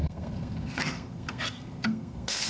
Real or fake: fake